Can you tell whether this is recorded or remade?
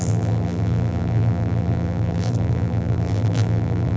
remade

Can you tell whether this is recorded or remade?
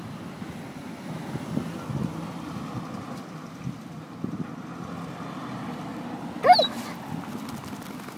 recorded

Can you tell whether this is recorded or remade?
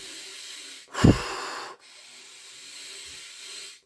recorded